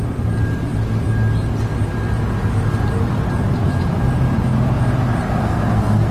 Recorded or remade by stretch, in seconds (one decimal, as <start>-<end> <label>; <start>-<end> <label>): 0.0-5.4 recorded; 5.4-6.1 remade